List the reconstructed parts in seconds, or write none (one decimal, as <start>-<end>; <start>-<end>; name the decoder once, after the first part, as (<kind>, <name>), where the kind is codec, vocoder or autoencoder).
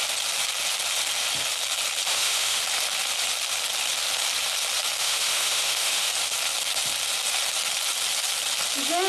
2.1-2.6 (autoencoder, DAC-VAE); 5.0-6.1